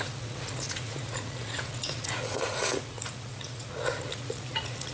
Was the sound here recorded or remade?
remade